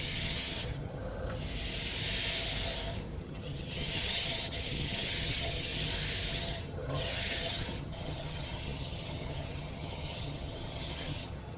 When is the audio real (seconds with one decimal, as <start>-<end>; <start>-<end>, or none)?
1.0-3.2; 5.7-6.3